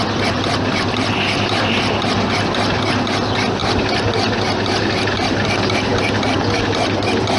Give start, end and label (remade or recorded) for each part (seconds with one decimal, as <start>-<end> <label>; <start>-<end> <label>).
0.0-7.4 recorded